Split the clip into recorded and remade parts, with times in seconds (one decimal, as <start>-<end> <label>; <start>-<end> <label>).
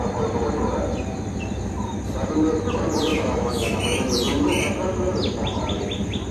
0.0-3.1 recorded; 3.1-4.1 remade; 4.1-6.3 recorded